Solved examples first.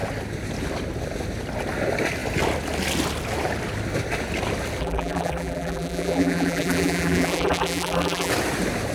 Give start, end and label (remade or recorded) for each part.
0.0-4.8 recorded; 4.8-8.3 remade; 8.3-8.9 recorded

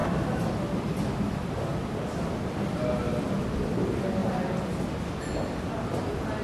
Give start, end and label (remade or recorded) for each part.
0.0-6.4 recorded

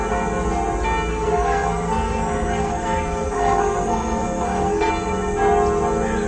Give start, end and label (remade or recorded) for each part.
0.0-1.1 recorded; 1.1-4.9 remade; 4.9-6.3 recorded